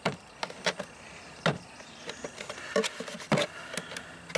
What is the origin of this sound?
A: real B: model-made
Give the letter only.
A